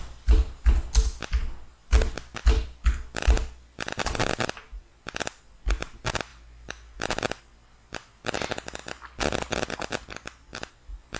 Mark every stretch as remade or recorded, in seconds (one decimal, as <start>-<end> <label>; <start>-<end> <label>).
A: 0.0-11.2 recorded